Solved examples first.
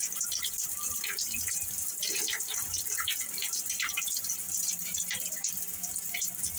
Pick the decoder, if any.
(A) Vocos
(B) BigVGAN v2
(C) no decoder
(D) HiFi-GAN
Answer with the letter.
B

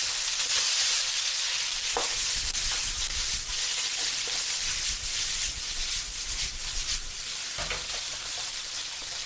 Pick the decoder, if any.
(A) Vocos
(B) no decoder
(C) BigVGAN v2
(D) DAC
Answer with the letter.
B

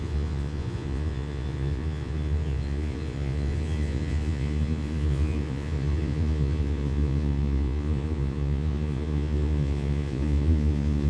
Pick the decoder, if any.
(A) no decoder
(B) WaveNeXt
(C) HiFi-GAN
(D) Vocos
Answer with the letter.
D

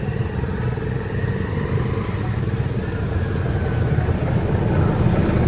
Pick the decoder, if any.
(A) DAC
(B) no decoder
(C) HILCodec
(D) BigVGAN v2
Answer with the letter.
B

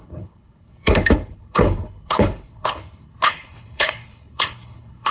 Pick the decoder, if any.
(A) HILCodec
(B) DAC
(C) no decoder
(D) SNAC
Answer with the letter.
A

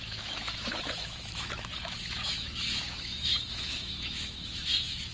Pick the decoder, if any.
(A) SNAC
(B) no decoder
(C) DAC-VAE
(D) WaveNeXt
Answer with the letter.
C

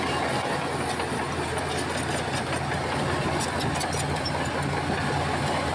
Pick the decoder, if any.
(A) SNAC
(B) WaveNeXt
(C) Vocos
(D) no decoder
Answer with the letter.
D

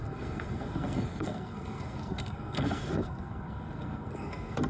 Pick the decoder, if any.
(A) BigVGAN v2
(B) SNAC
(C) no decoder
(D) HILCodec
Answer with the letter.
B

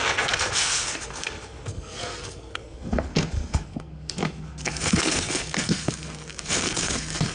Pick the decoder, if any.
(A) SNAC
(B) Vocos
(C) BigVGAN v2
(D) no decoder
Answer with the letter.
A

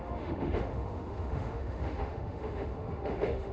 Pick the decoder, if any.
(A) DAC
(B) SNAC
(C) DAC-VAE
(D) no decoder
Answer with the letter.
C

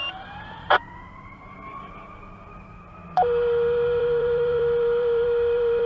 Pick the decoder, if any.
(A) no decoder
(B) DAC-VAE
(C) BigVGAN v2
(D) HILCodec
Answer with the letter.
C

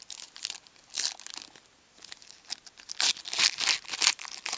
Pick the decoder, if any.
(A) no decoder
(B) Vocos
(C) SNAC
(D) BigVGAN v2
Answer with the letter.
A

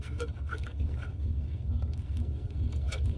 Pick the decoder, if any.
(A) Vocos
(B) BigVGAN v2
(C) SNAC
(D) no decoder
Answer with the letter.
C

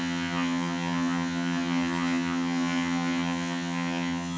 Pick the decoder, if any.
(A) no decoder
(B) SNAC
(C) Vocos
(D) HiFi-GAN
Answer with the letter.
D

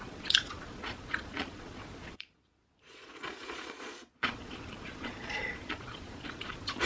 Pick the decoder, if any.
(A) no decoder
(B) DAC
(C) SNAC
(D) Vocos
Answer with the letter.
D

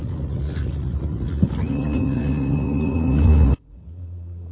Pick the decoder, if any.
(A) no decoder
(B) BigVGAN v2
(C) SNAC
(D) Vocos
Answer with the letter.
D